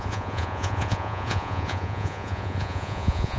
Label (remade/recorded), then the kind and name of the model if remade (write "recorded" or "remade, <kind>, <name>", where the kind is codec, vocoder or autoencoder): remade, vocoder, Vocos